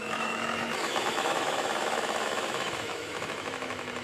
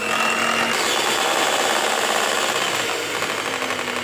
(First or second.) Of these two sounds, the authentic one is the second